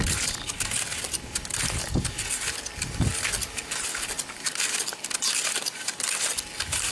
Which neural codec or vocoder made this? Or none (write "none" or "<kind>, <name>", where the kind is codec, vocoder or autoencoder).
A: none